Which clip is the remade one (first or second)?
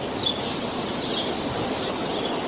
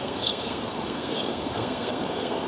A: second